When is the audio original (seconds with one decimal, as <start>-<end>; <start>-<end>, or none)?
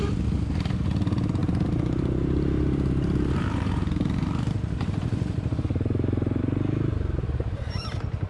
0.0-1.4; 6.4-8.3